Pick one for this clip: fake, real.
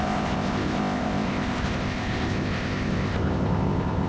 fake